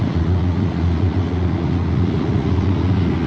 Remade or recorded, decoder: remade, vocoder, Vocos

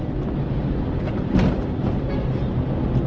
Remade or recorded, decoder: recorded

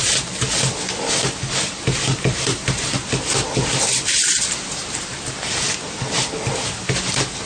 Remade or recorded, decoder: recorded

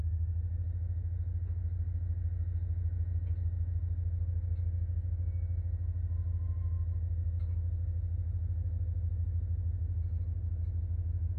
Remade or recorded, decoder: recorded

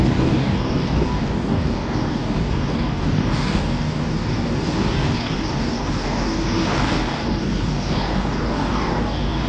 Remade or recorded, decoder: remade, codec, DAC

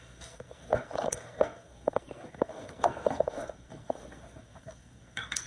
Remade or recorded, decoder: remade, codec, SNAC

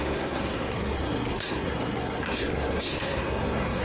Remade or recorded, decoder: remade, codec, SNAC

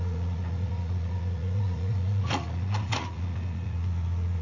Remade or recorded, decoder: remade, vocoder, Vocos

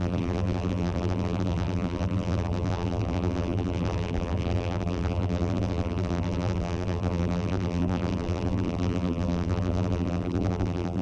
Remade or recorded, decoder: remade, vocoder, BigVGAN v2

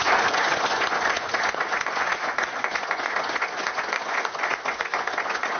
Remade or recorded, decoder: remade, vocoder, Vocos